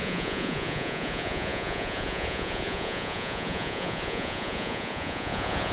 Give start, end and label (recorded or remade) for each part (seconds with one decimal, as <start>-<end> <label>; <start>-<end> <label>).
0.0-5.7 remade